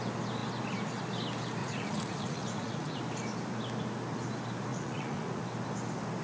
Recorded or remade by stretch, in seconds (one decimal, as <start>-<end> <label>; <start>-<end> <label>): 0.0-1.6 recorded; 1.6-3.0 remade; 3.0-4.7 recorded; 4.7-5.4 remade; 5.4-6.2 recorded